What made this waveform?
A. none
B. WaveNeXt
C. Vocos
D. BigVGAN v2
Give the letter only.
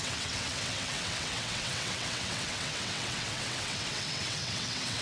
B